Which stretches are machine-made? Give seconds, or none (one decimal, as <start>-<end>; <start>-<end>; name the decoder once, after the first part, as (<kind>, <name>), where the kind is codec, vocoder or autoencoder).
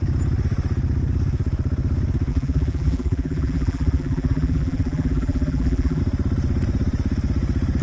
2.3-6.0 (vocoder, BigVGAN v2)